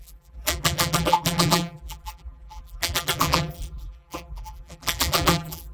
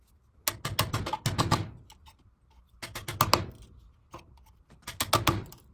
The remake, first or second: first